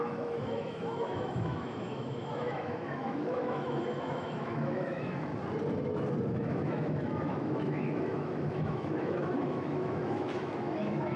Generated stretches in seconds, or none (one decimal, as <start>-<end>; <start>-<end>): 0.0-5.3; 6.3-11.2